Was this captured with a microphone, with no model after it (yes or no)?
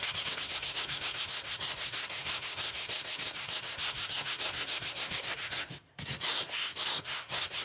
no